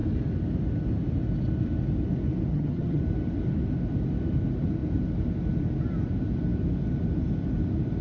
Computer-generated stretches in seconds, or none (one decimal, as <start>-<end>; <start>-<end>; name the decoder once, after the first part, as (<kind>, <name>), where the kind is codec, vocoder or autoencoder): 2.5-3.0 (vocoder, HiFi-GAN)